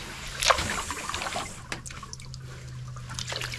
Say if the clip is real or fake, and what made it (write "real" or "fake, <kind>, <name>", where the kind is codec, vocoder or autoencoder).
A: real